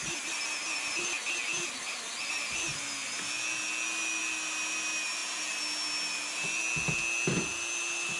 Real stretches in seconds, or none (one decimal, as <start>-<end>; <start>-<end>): 0.0-8.2